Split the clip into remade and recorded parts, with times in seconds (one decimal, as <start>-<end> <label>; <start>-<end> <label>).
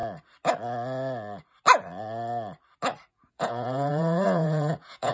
0.0-3.1 recorded; 3.1-5.1 remade